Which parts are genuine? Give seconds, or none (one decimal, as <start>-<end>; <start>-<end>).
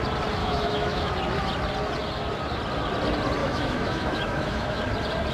0.0-0.4; 1.1-3.4; 4.8-5.3